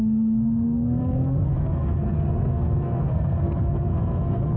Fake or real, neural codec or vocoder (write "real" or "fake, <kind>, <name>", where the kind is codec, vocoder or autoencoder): fake, codec, SNAC